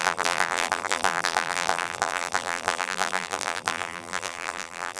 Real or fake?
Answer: fake